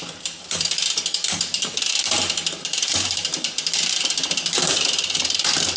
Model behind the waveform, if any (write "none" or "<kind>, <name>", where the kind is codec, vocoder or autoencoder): vocoder, BigVGAN v2